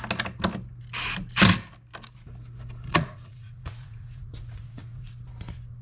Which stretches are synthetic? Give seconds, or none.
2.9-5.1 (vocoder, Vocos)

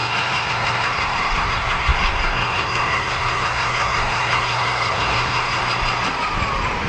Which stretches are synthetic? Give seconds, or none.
0.0-5.6 (codec, SNAC)

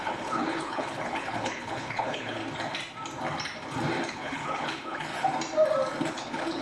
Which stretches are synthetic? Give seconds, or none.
0.0-2.4 (codec, HILCodec); 4.1-5.1; 6.1-6.6

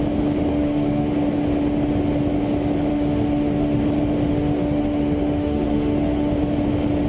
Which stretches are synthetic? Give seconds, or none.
0.5-1.1 (autoencoder, DAC-VAE); 2.9-3.8; 4.3-6.3

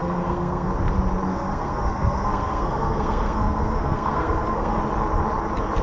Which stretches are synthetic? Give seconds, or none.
0.0-0.7 (codec, SNAC); 1.3-4.8

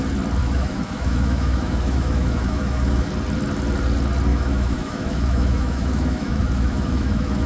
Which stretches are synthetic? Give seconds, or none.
0.4-3.1 (autoencoder, DAC-VAE); 4.3-7.5

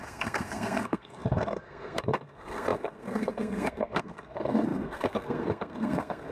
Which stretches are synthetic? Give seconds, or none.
0.0-6.3 (codec, SNAC)